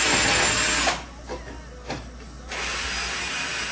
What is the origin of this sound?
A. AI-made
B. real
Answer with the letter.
B